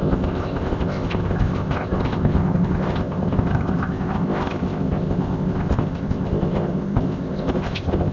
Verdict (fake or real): fake